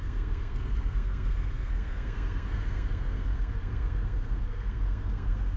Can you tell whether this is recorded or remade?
remade